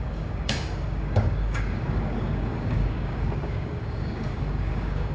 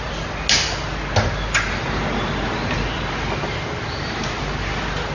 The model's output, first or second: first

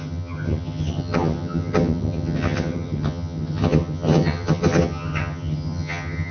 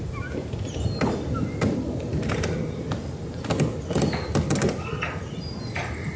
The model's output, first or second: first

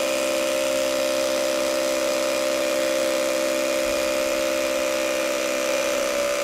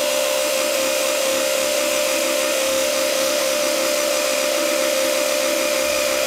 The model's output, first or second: second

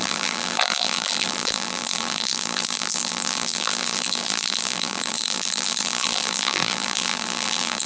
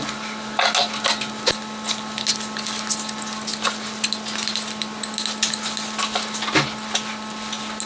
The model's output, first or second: first